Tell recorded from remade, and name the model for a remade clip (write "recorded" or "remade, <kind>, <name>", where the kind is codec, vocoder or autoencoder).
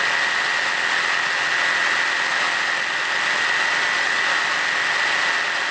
recorded